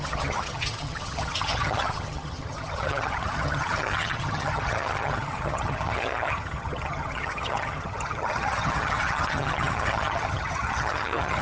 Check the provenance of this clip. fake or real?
fake